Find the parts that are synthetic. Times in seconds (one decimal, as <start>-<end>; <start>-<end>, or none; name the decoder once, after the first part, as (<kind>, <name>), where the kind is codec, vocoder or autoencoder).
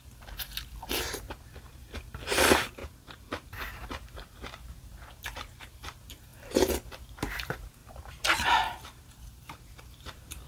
0.0-10.5 (vocoder, BigVGAN v2)